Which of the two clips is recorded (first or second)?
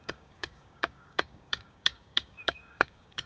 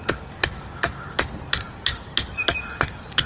second